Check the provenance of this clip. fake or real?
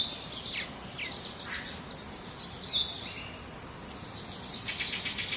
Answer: real